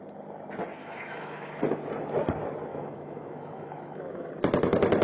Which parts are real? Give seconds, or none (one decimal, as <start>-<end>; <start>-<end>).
0.0-0.8; 1.6-2.7; 4.3-5.0